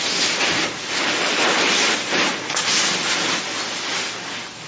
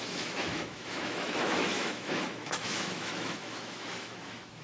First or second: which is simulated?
second